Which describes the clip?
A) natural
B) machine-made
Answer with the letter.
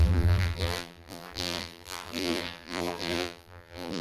B